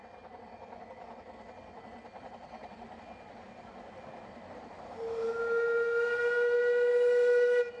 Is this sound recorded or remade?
recorded